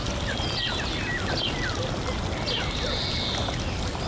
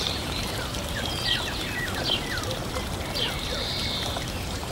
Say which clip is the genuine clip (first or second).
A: first